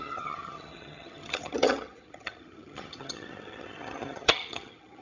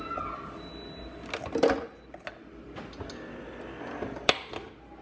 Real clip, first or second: second